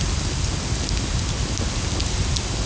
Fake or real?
real